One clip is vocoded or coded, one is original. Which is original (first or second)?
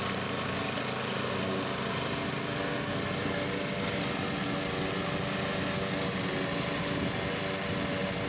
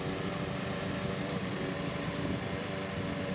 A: first